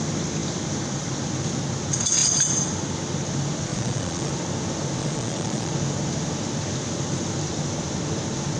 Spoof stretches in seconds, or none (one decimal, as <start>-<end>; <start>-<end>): 3.7-4.3; 5.0-5.7